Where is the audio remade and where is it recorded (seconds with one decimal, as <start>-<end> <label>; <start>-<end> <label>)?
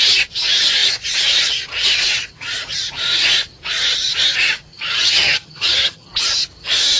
0.0-4.7 recorded; 4.7-6.1 remade; 6.1-7.0 recorded